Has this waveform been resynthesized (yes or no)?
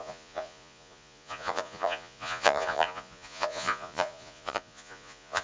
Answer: yes